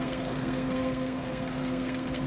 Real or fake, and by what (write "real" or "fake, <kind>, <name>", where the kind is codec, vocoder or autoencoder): fake, codec, SNAC